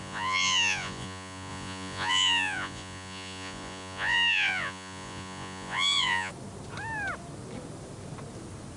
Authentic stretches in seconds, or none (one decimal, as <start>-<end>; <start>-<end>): 6.3-8.8